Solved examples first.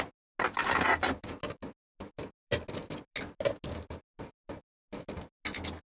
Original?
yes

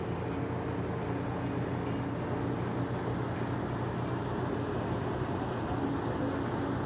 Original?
yes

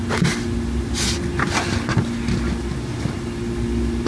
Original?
yes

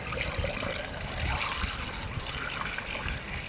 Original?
yes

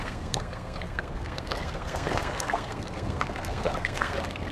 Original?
no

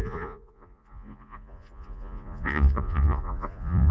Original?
no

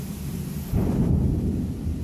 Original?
yes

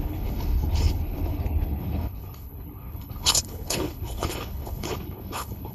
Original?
no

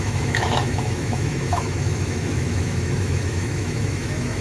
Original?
no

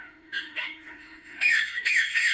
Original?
no